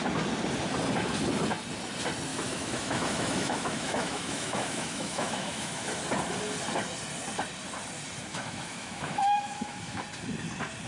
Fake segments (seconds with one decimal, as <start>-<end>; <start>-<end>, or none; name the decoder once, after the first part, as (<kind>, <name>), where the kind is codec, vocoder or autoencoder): 2.3-6.0 (autoencoder, DAC-VAE); 8.3-10.0